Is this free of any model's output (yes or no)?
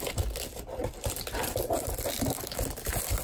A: yes